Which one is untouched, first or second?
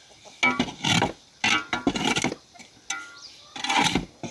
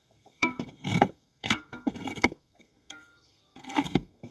first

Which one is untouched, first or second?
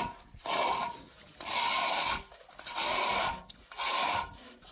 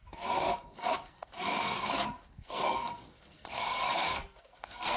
first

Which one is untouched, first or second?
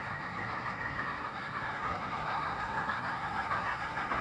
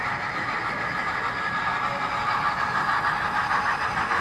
second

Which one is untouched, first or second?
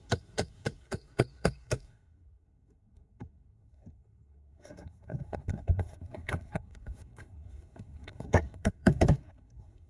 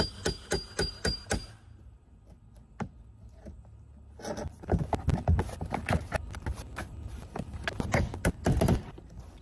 second